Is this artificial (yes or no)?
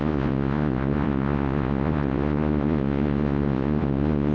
yes